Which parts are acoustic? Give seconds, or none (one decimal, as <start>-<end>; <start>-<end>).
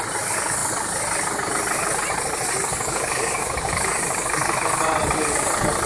0.0-2.7; 4.8-5.9